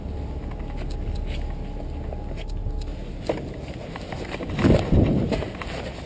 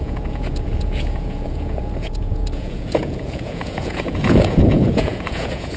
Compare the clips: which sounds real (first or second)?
first